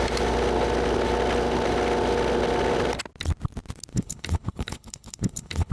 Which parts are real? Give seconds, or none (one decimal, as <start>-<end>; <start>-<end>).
0.0-3.9